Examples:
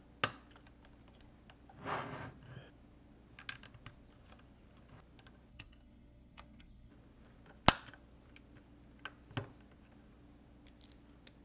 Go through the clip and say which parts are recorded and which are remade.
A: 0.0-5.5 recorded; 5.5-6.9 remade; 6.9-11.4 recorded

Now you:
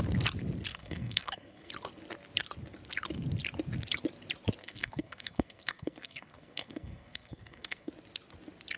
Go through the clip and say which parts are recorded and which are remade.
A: 0.0-0.7 recorded; 0.7-1.7 remade; 1.7-4.6 recorded; 4.6-7.9 remade; 7.9-8.8 recorded